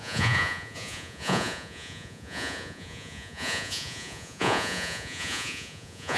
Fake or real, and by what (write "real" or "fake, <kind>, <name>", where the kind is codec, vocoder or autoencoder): fake, vocoder, Vocos